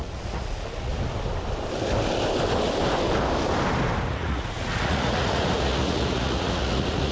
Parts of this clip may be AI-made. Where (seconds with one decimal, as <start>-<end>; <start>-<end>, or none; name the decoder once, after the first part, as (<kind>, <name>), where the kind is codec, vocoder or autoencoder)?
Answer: 0.0-0.9 (vocoder, Vocos); 4.1-7.1